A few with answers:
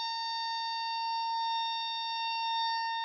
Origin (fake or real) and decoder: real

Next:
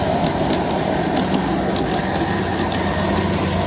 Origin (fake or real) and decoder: real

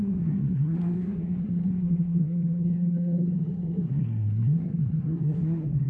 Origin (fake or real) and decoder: fake, codec, SNAC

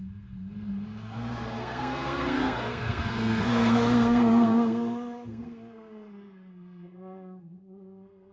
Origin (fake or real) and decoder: fake, codec, SNAC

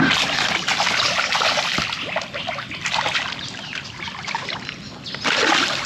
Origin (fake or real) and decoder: real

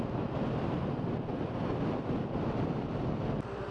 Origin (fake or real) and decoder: real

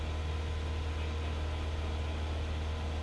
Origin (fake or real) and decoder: real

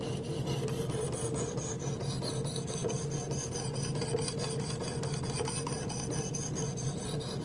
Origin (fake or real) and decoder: real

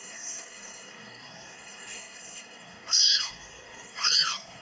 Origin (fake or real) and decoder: fake, codec, SNAC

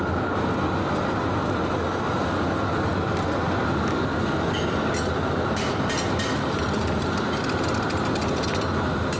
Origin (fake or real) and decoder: real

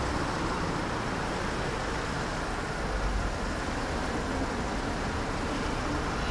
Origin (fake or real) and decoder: real